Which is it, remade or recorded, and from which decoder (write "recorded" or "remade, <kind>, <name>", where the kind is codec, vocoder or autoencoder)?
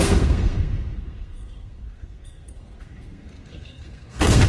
remade, codec, SNAC